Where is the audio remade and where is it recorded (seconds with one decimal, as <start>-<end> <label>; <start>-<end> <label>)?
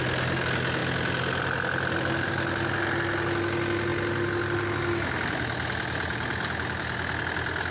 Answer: 0.0-7.7 recorded